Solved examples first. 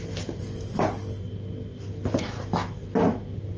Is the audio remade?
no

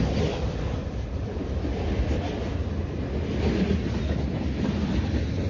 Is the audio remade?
no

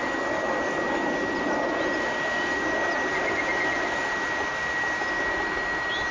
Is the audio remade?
no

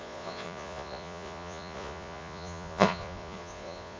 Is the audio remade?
yes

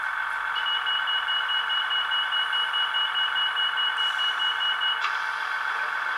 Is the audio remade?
no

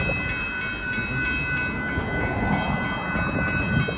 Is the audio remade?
no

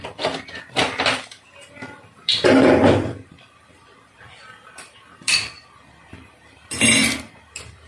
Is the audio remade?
yes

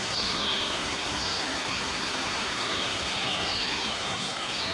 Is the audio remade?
yes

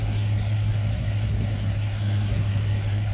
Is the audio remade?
yes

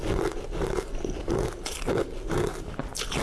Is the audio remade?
no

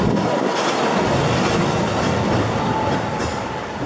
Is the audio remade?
no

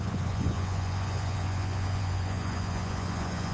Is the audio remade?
yes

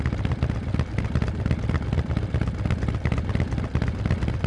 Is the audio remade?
no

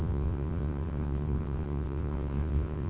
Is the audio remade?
yes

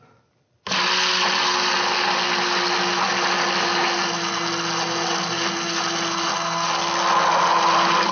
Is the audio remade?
no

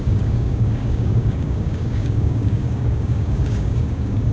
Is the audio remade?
yes